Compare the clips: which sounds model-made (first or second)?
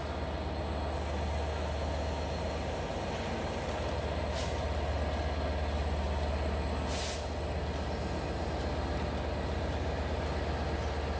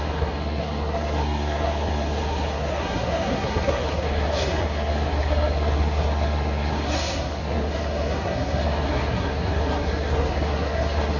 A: second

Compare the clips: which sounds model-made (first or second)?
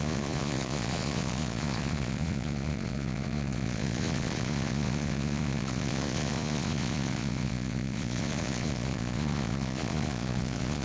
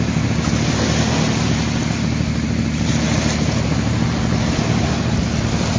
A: first